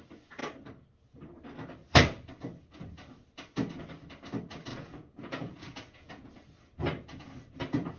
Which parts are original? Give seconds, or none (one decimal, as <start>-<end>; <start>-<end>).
0.0-4.7; 6.3-8.0